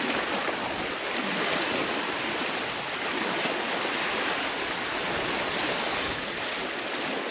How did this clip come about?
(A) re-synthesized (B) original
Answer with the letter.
B